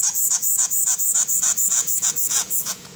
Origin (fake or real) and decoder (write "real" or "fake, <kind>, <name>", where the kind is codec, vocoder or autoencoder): fake, vocoder, Vocos